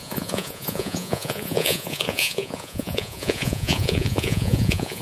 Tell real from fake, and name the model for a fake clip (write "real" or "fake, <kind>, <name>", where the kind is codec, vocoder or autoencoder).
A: fake, vocoder, Vocos